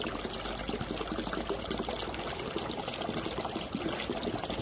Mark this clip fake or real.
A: real